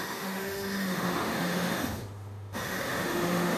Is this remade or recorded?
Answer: remade